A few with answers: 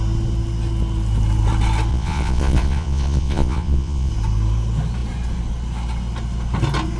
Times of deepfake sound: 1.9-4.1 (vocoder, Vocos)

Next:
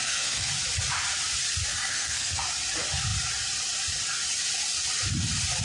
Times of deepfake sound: 0.0-0.5 (codec, SNAC); 1.7-2.4